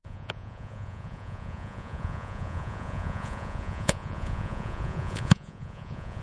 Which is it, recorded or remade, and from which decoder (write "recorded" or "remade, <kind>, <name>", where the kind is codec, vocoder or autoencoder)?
remade, vocoder, Vocos